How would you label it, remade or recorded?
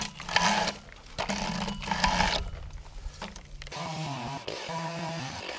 recorded